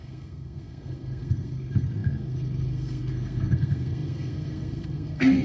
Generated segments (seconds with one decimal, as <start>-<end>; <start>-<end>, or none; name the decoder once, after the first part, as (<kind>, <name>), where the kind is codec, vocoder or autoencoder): 0.0-5.4 (codec, SNAC)